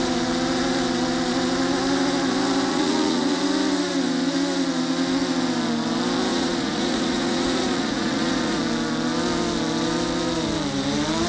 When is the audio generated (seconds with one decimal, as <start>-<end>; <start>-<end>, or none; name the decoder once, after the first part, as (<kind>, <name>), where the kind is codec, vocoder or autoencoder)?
2.7-3.4 (vocoder, Vocos); 6.3-8.6